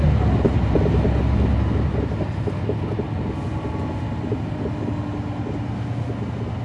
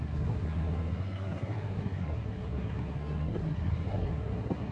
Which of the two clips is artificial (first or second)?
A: second